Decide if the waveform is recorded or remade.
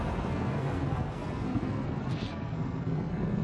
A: remade